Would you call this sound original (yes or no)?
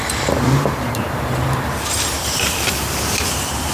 yes